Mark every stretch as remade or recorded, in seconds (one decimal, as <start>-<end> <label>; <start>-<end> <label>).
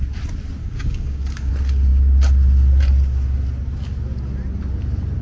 0.0-0.6 recorded; 0.6-1.5 remade; 1.5-5.2 recorded